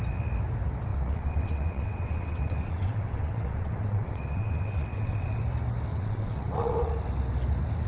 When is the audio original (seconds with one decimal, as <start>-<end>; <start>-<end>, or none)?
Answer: 0.0-0.9; 5.4-5.9; 6.9-7.9